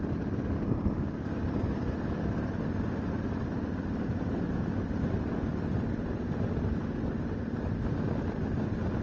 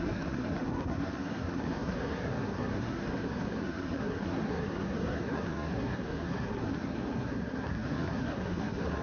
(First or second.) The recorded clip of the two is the first